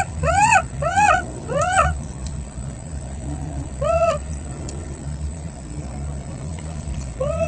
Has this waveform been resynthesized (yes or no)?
yes